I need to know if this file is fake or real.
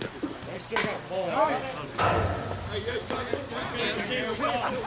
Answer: real